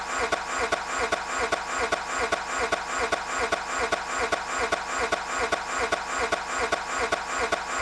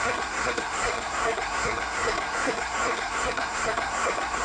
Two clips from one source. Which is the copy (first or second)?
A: second